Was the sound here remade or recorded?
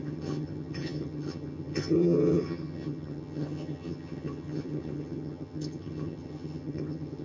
remade